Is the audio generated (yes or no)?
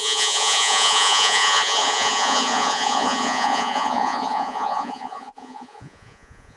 yes